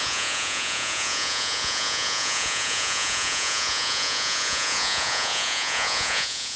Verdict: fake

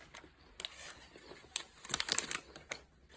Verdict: real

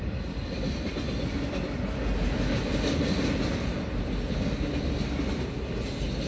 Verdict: real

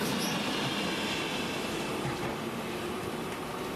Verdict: real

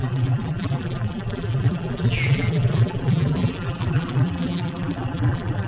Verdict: fake